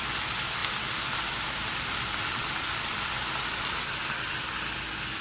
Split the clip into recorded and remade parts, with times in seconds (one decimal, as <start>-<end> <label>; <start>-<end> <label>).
0.0-5.2 recorded